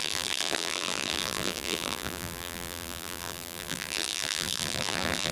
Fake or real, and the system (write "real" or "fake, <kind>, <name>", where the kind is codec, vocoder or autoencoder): fake, vocoder, BigVGAN v2